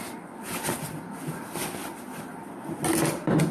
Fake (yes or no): no